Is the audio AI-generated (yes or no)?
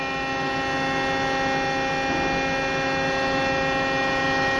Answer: no